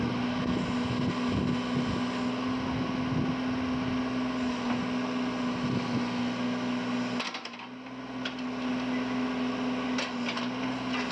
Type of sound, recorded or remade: recorded